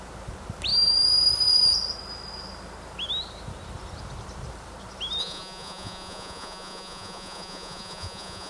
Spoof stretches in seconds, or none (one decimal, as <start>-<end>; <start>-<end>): 5.2-8.5